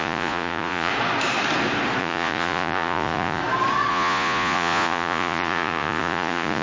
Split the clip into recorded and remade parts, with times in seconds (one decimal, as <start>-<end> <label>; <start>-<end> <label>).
0.0-0.9 remade; 0.9-2.0 recorded; 2.0-3.4 remade; 3.4-3.9 recorded; 3.9-6.6 remade